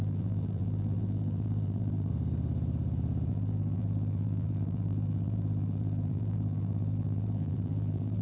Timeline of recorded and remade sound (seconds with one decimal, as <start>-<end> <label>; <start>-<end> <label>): 0.0-2.1 remade; 2.1-3.3 recorded; 3.3-8.2 remade